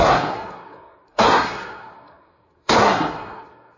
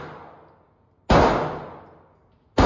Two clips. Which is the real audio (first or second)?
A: second